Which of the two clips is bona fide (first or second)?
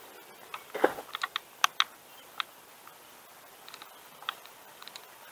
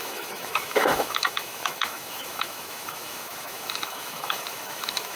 first